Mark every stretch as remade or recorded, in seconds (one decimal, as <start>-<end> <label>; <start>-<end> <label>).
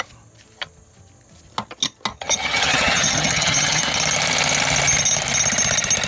0.0-2.1 recorded; 2.1-3.8 remade; 3.8-6.1 recorded